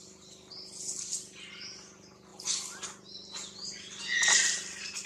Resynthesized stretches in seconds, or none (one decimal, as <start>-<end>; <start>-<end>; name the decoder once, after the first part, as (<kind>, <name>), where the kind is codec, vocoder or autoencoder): none